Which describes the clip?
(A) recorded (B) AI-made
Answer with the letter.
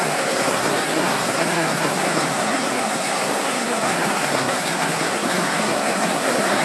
B